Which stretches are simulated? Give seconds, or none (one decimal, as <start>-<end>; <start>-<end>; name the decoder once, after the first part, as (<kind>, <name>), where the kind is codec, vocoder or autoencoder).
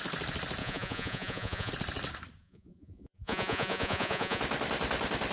0.6-1.7 (vocoder, Vocos); 2.4-4.4